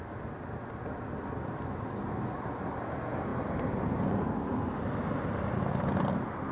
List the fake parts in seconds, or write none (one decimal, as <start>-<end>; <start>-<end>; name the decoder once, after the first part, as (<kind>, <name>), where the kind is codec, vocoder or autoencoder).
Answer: none